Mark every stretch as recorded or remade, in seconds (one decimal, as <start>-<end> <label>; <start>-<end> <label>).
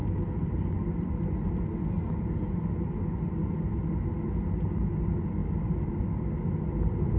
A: 0.0-3.4 recorded; 3.4-3.9 remade; 3.9-7.2 recorded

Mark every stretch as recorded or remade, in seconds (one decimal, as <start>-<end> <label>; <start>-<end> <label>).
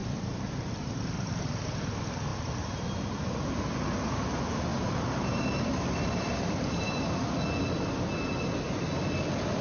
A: 0.0-1.3 remade; 1.3-4.7 recorded; 4.7-7.1 remade; 7.1-9.6 recorded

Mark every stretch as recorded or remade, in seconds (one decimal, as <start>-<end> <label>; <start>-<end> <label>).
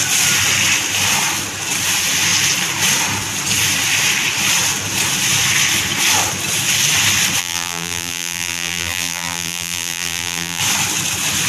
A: 0.0-7.4 recorded; 7.4-10.6 remade; 10.6-11.5 recorded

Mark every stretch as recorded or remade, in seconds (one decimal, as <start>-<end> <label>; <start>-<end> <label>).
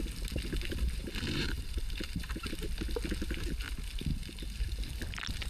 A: 0.0-1.0 recorded; 1.0-2.5 remade; 2.5-4.1 recorded; 4.1-4.8 remade; 4.8-5.5 recorded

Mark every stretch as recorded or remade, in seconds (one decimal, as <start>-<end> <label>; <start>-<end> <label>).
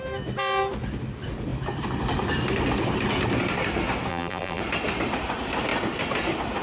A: 0.0-4.1 recorded; 4.1-4.6 remade; 4.6-6.6 recorded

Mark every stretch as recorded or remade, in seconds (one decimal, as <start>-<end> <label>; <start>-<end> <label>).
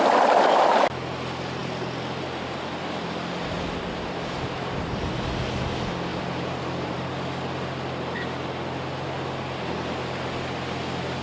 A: 0.0-6.1 recorded; 6.1-7.1 remade; 7.1-11.2 recorded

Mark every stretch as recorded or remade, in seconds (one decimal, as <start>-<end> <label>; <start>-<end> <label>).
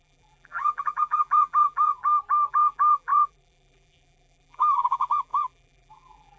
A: 0.0-2.0 remade; 2.0-2.5 recorded; 2.5-6.4 remade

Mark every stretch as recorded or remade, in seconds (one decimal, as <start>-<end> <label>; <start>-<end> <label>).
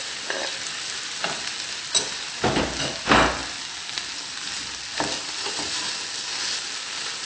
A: 0.0-0.5 recorded; 0.5-1.6 remade; 1.6-2.1 recorded; 2.1-2.6 remade; 2.6-3.4 recorded; 3.4-7.3 remade